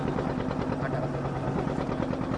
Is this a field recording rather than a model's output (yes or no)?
yes